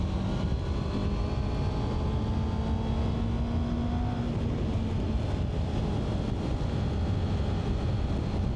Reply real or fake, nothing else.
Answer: real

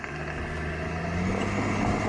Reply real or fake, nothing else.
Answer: real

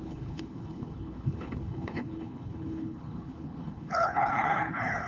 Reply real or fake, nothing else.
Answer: fake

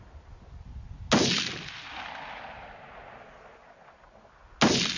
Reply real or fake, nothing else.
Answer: real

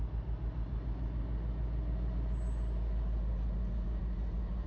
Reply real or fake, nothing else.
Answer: real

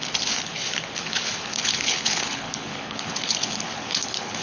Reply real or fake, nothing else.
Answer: fake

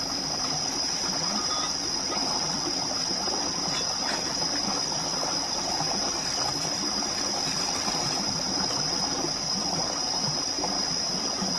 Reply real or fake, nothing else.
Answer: real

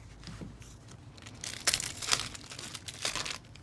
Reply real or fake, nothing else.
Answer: real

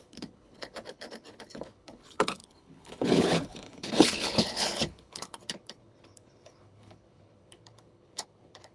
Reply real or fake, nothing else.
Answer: fake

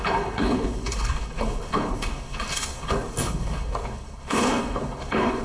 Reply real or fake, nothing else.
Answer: fake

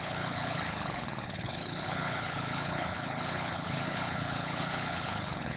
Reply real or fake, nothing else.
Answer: fake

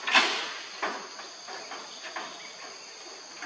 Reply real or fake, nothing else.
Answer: real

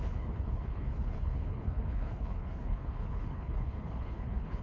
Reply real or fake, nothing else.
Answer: fake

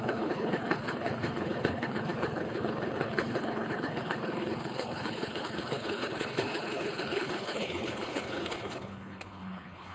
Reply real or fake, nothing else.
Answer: fake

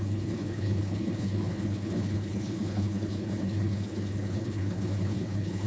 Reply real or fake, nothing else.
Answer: fake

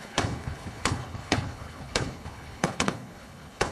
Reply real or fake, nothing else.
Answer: fake